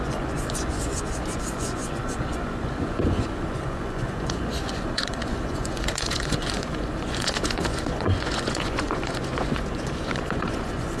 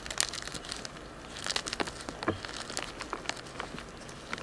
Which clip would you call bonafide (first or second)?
second